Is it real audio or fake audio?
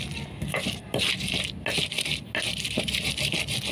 real